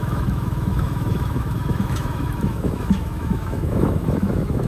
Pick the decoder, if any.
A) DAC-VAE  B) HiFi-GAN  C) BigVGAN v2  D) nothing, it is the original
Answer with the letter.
A